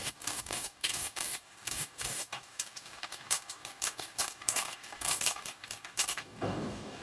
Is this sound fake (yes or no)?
yes